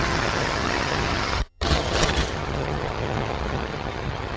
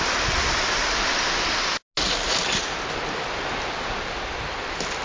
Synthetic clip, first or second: first